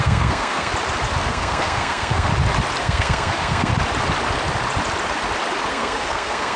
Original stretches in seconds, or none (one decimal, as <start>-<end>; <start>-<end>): 0.7-1.3; 2.3-2.8; 3.7-5.7